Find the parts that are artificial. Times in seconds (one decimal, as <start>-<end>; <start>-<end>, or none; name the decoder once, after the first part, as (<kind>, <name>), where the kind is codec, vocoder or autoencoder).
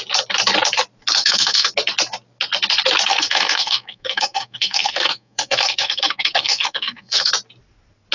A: 1.2-1.7 (codec, SNAC); 3.1-7.3